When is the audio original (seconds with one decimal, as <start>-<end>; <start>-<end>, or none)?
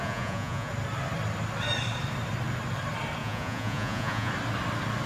0.7-3.2; 4.3-5.1